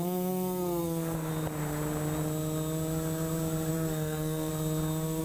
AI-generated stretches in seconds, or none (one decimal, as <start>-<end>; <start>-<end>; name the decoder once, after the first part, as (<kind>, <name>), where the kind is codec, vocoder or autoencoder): 0.0-1.3 (codec, SNAC); 3.7-4.5